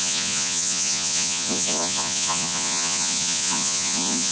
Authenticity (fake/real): fake